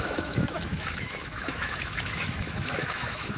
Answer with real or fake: fake